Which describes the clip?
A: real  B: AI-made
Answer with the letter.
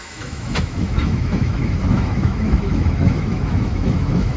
B